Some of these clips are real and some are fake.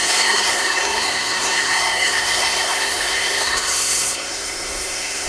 fake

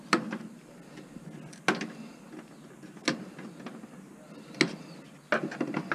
real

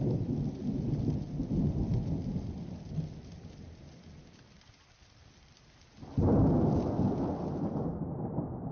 real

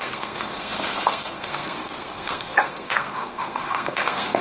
fake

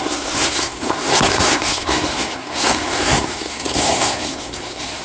fake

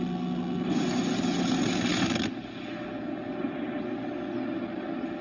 real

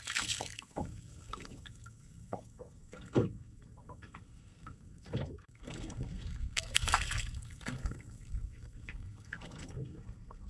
fake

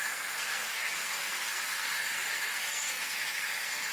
fake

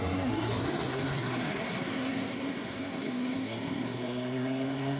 fake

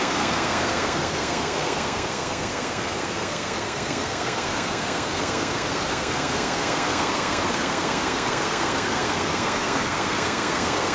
fake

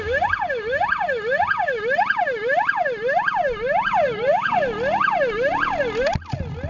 real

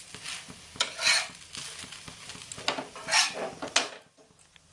real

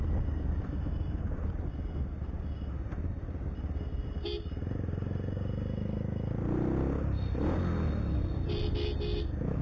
real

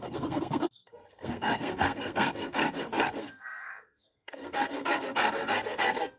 fake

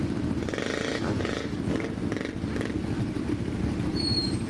real